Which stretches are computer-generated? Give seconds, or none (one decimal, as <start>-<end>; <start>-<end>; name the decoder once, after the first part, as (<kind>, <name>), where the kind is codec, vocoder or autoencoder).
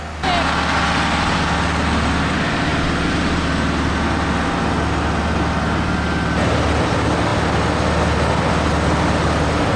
none